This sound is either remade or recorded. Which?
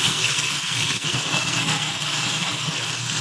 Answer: remade